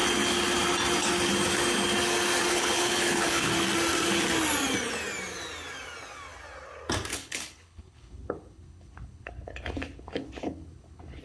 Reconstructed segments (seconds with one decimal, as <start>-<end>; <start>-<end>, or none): 2.5-3.5; 7.1-11.2